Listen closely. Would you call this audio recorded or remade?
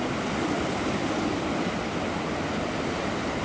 recorded